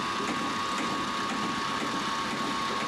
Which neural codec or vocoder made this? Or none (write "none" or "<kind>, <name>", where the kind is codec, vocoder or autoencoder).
none